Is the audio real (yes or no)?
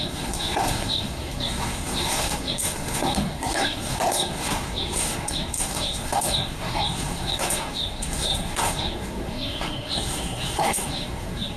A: no